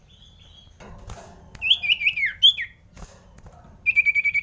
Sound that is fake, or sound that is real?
real